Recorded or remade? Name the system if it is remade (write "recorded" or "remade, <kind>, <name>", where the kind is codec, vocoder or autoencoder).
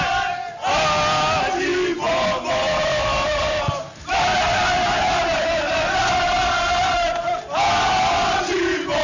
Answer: recorded